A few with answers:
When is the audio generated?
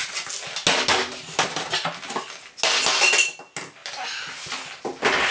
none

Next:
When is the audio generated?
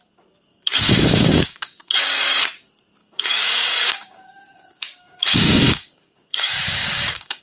0.5-2.4 (codec, DAC); 3.0-7.4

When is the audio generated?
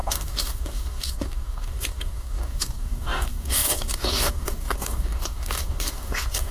0.0-6.5 (codec, DAC)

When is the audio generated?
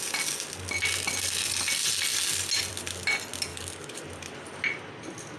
3.5-4.0 (codec, DAC)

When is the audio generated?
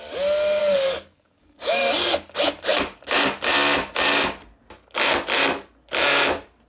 0.6-1.8 (codec, DAC)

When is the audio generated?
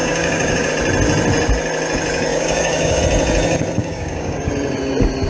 0.0-0.7 (codec, DAC); 2.3-3.0; 3.8-4.5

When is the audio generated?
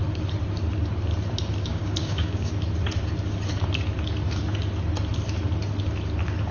1.7-2.5 (codec, DAC)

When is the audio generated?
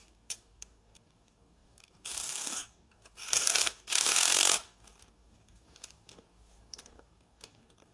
0.0-7.9 (codec, DAC)